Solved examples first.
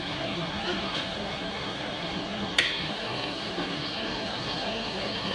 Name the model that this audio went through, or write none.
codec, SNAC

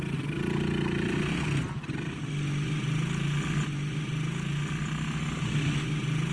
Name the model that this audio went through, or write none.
none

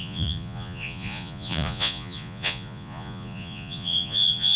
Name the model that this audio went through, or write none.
vocoder, Vocos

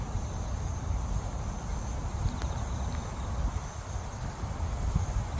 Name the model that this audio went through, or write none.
none